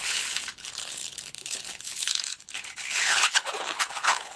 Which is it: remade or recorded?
remade